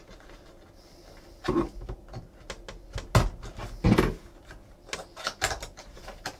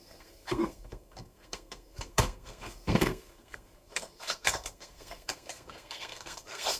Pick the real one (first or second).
first